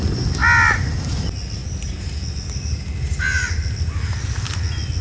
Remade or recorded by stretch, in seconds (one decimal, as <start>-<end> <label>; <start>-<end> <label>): 0.0-5.0 recorded